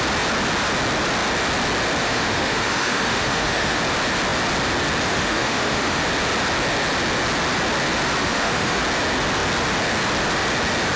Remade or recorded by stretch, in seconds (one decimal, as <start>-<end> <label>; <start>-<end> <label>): 0.0-2.0 recorded; 2.0-3.8 remade; 3.8-5.1 recorded; 5.1-6.0 remade; 6.0-8.2 recorded; 8.2-8.8 remade; 8.8-11.0 recorded